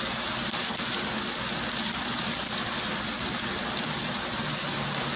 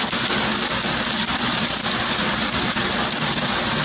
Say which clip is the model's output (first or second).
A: second